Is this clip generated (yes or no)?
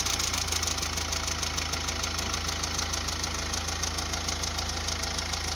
no